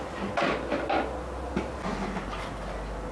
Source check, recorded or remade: recorded